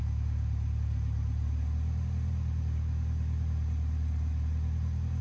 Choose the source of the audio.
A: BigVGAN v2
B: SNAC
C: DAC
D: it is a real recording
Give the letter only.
A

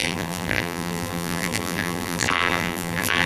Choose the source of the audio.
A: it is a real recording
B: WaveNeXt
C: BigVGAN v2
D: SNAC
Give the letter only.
C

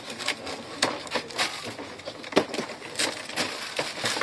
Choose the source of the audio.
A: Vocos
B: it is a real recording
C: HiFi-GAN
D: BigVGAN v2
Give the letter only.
B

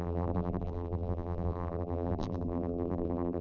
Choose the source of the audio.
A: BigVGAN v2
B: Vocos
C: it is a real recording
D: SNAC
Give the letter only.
A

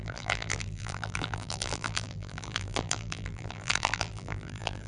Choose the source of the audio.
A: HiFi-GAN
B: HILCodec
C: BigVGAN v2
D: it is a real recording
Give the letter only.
C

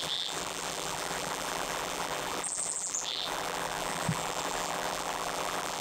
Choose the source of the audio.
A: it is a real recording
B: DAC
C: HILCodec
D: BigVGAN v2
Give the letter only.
D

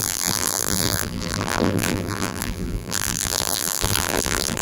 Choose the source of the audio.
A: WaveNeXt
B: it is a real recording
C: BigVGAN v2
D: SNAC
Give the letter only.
C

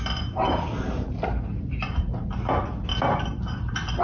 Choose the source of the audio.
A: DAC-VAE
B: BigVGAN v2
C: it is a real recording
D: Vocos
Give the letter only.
C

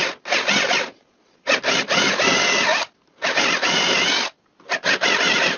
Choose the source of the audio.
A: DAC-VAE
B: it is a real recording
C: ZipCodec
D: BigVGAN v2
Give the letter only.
B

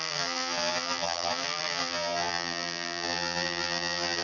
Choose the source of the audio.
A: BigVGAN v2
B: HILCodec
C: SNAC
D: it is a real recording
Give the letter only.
A